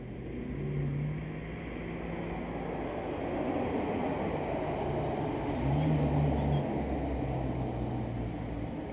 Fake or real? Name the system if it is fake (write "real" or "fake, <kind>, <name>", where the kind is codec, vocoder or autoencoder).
real